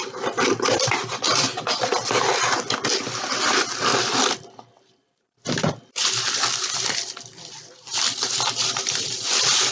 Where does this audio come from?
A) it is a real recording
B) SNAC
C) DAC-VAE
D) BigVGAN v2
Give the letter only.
D